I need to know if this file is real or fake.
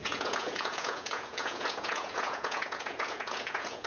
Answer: fake